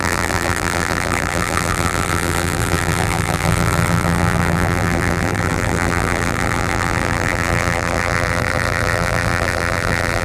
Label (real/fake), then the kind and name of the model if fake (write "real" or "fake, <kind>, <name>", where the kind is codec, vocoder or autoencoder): fake, vocoder, BigVGAN v2